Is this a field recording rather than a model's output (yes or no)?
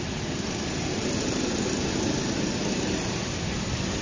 yes